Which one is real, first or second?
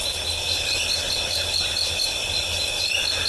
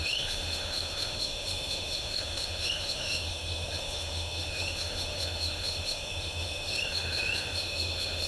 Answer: first